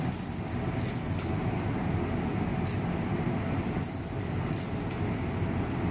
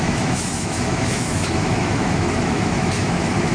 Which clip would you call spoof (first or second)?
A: second